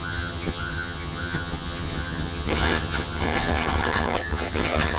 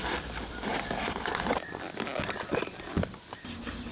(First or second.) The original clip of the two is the second